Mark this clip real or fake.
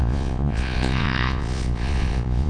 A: fake